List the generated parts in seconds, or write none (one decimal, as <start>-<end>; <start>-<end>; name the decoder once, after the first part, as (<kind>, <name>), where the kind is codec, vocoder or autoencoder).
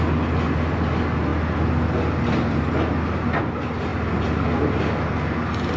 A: none